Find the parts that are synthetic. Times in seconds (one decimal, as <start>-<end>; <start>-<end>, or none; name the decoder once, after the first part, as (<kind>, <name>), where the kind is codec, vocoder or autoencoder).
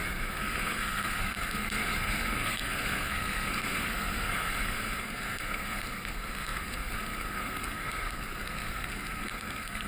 0.0-9.9 (codec, SNAC)